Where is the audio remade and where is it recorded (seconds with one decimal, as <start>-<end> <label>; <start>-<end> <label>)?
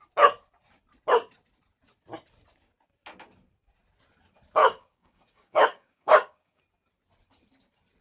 0.0-4.6 recorded; 4.6-6.6 remade; 6.6-8.0 recorded